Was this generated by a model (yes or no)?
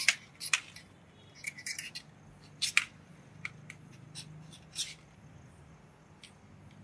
no